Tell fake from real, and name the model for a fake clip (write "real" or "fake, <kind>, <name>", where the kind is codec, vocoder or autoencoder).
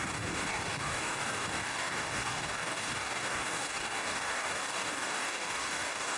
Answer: fake, codec, DAC